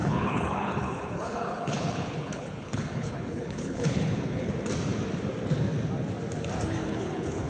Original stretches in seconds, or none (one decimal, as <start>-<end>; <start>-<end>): 4.5-6.8